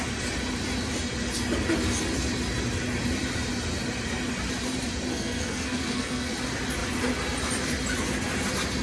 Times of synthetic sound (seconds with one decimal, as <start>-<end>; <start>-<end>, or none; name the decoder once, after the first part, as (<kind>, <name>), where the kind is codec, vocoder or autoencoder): 5.1-6.3 (codec, SNAC)